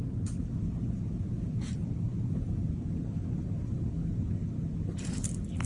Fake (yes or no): no